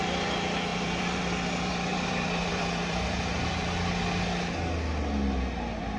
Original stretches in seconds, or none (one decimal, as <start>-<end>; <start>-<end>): 0.0-0.7; 3.3-6.0